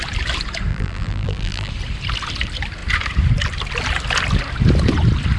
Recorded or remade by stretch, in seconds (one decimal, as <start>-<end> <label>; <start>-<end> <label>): 0.0-0.7 recorded; 0.7-1.7 remade; 1.7-5.4 recorded